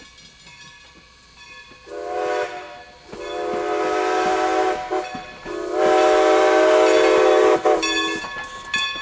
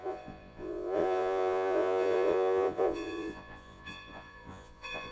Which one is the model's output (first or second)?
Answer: second